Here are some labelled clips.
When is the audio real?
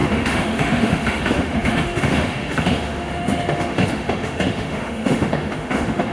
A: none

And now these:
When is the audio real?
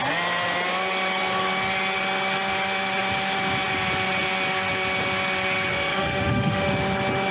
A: 0.0-5.7; 6.7-7.3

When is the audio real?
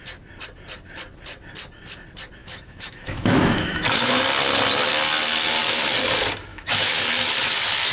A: 0.0-2.4; 4.2-6.5; 7.0-7.9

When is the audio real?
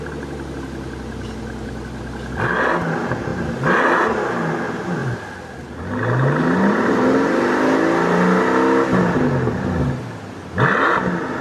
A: 0.0-11.4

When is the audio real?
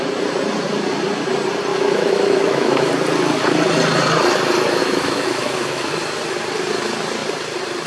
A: 0.0-1.7; 2.9-4.8; 5.9-7.9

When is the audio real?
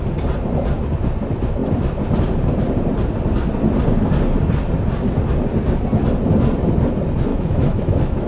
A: 0.0-7.3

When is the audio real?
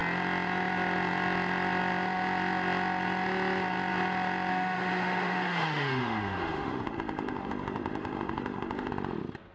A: 0.0-4.5; 8.9-9.5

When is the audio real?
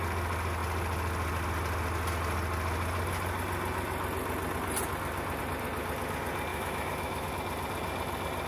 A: 0.0-6.5; 7.3-8.5